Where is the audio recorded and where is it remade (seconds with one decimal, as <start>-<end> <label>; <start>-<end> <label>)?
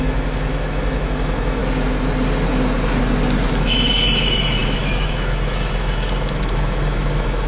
0.0-1.6 remade; 1.6-3.5 recorded; 3.5-7.5 remade